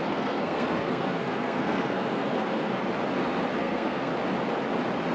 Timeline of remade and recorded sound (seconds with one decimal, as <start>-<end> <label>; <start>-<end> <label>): 0.0-2.8 remade; 2.8-3.6 recorded; 3.6-4.1 remade; 4.1-5.1 recorded